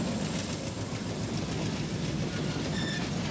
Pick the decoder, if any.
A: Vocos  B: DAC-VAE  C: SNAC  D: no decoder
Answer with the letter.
D